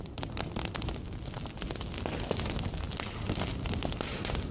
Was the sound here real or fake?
real